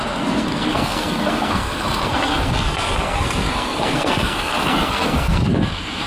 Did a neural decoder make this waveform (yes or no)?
yes